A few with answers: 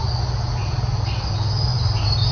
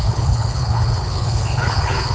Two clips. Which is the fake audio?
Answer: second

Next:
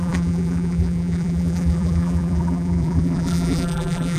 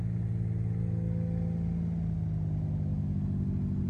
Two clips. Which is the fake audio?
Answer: first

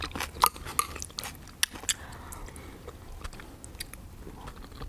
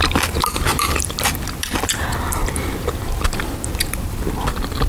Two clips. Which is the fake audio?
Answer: second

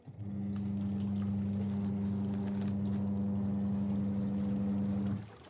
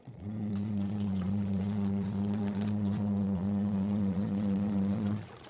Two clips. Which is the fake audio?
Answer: second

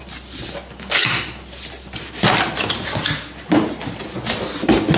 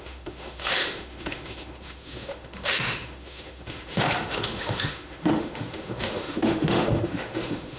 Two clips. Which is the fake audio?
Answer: second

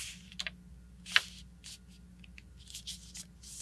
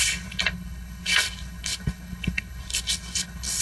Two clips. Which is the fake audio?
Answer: second